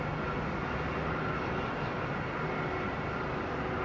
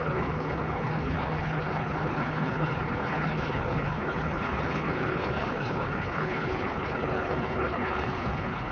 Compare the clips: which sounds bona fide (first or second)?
first